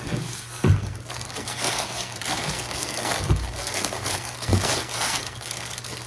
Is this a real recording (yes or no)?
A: no